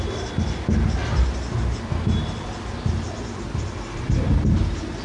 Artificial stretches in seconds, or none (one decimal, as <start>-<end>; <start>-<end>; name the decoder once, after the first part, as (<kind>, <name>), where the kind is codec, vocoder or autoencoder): none